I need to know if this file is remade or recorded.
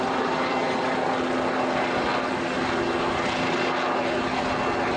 recorded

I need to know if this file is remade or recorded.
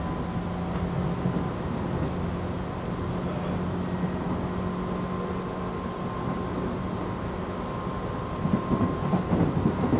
recorded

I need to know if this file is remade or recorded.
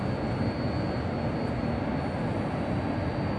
recorded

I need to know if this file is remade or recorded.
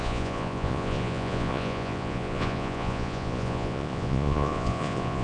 remade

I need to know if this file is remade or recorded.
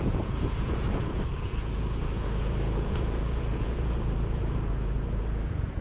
remade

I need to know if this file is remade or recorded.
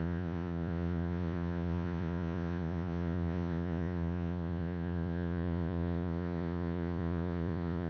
remade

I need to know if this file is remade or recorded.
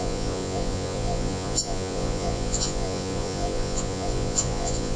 remade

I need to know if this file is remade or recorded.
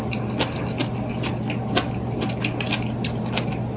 recorded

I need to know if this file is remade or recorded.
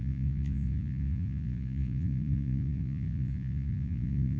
remade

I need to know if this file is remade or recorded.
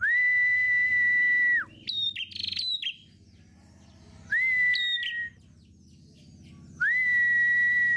recorded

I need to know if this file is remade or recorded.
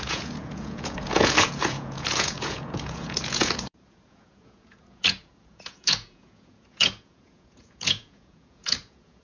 remade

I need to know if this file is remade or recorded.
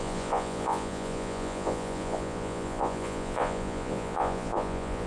remade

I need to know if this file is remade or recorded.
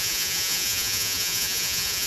remade